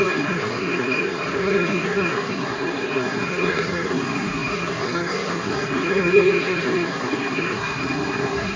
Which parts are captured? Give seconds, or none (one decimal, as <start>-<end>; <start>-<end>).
none